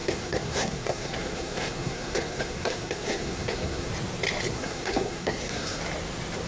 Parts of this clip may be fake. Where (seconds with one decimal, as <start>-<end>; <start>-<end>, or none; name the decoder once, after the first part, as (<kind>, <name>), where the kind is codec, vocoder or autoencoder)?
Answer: 0.0-3.9 (codec, SNAC); 4.5-5.8

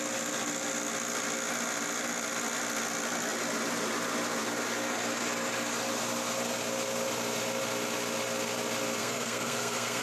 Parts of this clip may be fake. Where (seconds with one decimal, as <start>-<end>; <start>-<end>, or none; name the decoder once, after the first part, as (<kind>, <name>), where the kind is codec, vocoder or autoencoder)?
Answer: 9.0-10.0 (codec, SNAC)

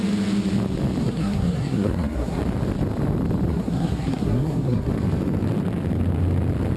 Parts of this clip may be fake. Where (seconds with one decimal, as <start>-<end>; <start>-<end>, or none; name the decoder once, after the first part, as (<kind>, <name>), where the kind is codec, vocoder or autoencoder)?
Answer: 1.0-2.4 (codec, SNAC); 3.5-4.9

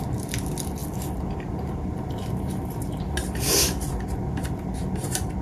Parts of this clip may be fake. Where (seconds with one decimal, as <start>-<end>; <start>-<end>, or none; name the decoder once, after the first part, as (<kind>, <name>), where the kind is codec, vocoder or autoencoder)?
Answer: none

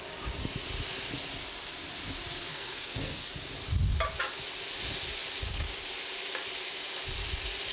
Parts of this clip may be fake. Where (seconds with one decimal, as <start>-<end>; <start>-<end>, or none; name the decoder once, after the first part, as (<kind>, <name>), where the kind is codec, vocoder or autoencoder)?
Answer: 2.5-3.3 (codec, SNAC)

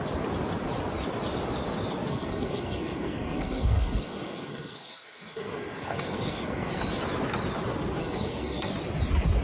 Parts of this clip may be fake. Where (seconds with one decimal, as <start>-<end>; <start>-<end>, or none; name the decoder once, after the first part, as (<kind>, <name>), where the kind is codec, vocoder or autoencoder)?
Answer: 2.1-7.0 (codec, SNAC); 8.0-8.7